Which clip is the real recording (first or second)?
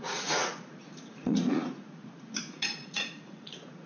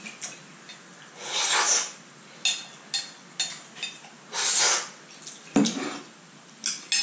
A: second